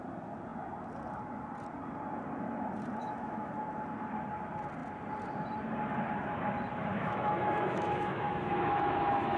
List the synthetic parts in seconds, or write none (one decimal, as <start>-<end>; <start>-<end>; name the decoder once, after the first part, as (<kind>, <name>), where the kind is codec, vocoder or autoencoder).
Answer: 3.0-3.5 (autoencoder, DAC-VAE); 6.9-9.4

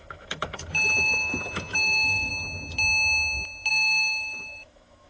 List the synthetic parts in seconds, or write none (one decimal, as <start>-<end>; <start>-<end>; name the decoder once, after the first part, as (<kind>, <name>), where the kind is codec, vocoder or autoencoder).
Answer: 0.0-2.3 (autoencoder, DAC-VAE); 3.7-5.1

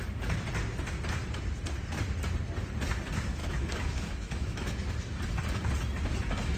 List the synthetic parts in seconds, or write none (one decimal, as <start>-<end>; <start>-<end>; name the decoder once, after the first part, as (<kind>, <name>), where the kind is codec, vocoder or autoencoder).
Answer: 3.4-4.9 (autoencoder, DAC-VAE)

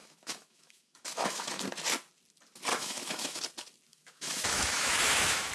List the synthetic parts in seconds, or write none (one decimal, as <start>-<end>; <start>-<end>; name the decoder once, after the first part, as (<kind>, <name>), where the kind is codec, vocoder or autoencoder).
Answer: 0.0-1.6 (autoencoder, DAC-VAE); 2.7-3.4; 3.9-5.5

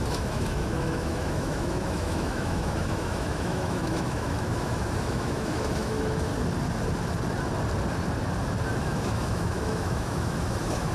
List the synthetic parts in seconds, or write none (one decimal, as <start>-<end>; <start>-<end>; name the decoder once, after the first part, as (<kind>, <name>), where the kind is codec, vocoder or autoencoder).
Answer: 0.0-6.3 (autoencoder, DAC-VAE); 8.8-10.9

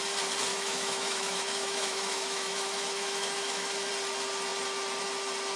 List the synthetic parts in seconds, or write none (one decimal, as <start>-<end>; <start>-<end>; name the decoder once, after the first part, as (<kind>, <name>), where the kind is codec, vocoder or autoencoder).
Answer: 0.5-3.9 (autoencoder, DAC-VAE)